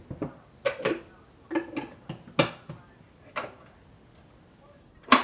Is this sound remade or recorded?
recorded